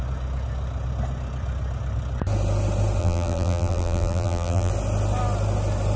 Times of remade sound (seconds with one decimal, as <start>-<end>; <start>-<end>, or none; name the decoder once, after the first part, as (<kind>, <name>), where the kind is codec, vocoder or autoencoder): 3.0-4.7 (vocoder, BigVGAN v2)